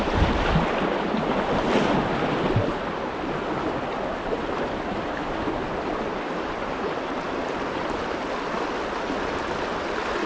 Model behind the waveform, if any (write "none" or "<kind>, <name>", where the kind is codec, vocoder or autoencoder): none